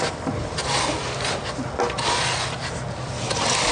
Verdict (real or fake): real